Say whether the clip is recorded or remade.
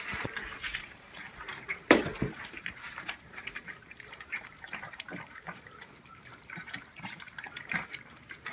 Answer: remade